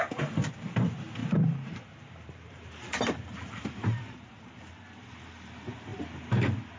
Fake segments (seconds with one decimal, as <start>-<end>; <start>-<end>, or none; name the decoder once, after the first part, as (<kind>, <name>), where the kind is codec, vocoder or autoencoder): 1.2-5.3 (vocoder, BigVGAN v2)